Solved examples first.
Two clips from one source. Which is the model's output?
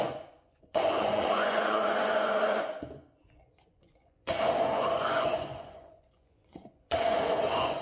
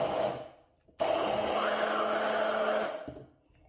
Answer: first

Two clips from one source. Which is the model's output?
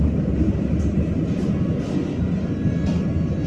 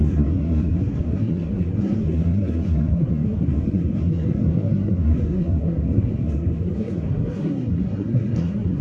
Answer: second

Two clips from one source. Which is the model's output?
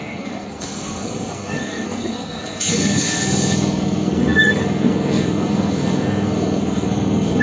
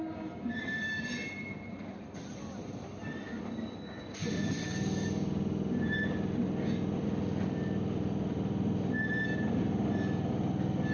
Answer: first